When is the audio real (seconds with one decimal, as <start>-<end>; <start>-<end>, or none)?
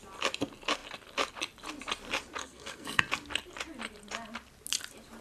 0.0-2.4; 3.0-5.2